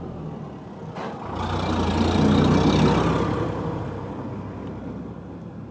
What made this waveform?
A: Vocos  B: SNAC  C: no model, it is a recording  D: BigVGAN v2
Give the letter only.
C